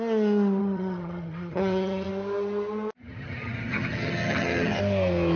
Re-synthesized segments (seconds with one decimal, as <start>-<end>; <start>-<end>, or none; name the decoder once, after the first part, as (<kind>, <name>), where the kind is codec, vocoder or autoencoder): 0.6-2.1 (vocoder, HiFi-GAN); 3.0-4.8